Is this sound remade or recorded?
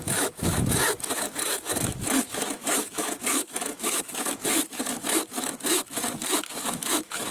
remade